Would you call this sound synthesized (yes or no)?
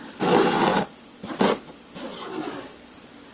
no